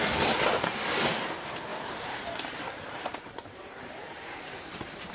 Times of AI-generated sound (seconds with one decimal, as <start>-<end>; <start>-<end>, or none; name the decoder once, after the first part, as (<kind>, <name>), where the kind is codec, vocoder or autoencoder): 1.7-5.1 (vocoder, BigVGAN v2)